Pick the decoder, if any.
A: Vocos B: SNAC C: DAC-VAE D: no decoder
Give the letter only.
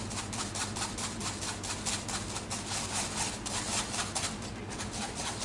D